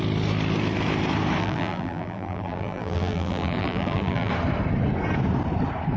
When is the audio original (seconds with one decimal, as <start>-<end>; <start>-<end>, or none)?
0.0-1.4; 4.3-6.0